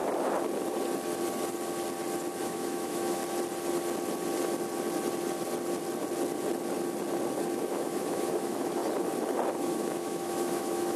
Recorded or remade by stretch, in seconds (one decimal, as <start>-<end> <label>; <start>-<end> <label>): 0.0-2.4 recorded; 2.4-3.2 remade; 3.2-7.7 recorded; 7.7-8.8 remade; 8.8-9.6 recorded; 9.6-11.0 remade